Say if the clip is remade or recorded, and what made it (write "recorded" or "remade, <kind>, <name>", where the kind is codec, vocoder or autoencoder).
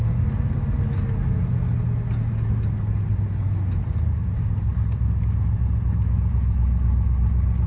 recorded